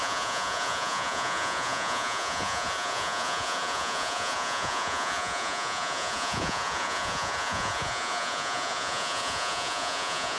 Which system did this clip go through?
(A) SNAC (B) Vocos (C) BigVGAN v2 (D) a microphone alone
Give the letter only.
B